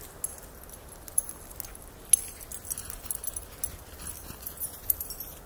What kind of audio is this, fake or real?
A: real